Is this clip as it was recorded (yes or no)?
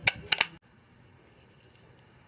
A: yes